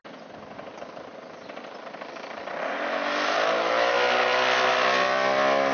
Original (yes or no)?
yes